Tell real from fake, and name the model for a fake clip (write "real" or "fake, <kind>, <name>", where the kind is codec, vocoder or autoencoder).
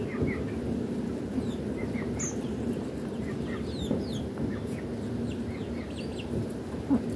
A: real